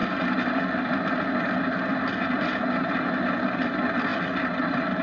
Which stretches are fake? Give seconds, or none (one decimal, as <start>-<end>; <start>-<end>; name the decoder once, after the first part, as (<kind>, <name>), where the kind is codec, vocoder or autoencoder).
none

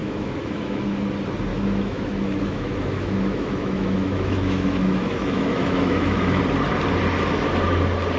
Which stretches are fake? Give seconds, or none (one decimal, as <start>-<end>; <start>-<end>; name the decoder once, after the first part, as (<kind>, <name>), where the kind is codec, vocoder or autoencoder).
0.0-1.0 (autoencoder, DAC-VAE); 1.5-6.4

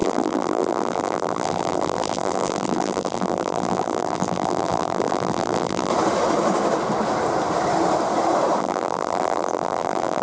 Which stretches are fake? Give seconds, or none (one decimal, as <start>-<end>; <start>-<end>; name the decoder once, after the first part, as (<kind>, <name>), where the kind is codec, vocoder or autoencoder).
0.0-5.9 (vocoder, BigVGAN v2); 8.6-10.2

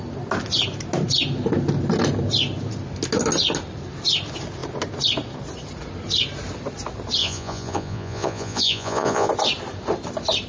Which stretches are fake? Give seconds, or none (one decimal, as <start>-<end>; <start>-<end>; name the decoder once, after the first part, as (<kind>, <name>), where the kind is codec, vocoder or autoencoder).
7.2-9.3 (vocoder, Vocos)

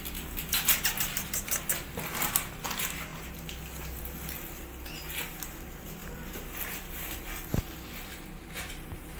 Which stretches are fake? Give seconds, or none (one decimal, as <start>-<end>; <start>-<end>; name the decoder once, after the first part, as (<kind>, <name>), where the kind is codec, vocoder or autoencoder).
none

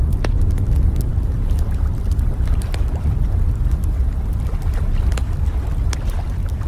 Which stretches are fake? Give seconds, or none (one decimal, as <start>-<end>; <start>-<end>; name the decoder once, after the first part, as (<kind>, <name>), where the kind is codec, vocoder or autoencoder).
none